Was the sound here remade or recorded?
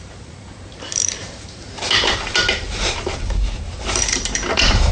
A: remade